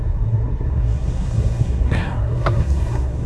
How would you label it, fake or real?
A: fake